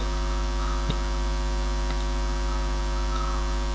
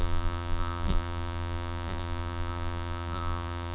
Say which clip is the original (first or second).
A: first